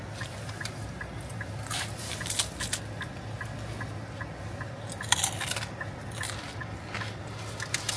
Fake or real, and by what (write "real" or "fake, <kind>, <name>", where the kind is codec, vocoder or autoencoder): real